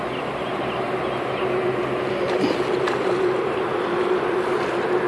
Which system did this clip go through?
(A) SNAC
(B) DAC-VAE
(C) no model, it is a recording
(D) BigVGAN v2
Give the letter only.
C